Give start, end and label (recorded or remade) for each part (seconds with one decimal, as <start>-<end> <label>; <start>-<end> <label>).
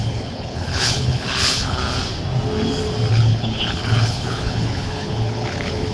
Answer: 0.0-1.8 remade; 1.8-3.1 recorded; 3.1-5.9 remade